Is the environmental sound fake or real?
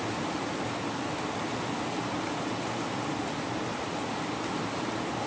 real